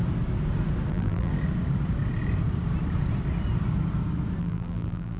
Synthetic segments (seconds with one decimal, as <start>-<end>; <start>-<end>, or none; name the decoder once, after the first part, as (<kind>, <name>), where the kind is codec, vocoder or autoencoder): 0.9-1.3 (vocoder, BigVGAN v2); 4.4-5.2